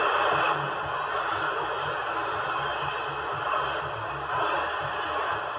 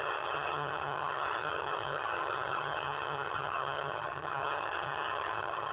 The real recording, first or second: first